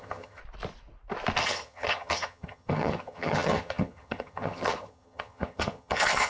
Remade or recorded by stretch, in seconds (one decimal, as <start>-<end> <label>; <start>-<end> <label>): 0.0-0.4 remade; 0.4-1.4 recorded; 1.4-6.3 remade